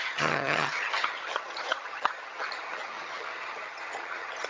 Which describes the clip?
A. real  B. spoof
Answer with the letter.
B